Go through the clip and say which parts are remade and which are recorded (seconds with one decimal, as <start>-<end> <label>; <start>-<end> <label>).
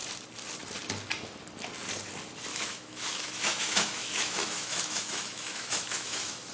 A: 0.0-2.5 recorded; 2.5-6.5 remade